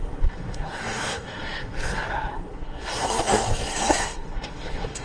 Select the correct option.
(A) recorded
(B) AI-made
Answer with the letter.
B